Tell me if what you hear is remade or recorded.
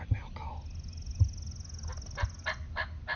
recorded